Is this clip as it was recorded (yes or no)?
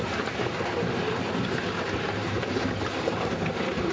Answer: yes